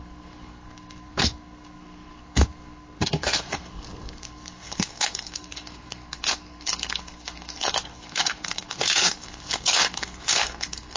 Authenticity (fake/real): fake